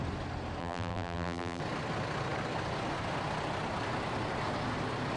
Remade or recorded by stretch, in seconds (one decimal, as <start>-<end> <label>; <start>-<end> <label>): 0.0-0.6 recorded; 0.6-1.6 remade; 1.6-5.2 recorded